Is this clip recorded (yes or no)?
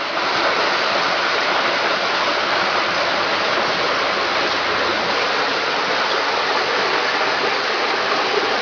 yes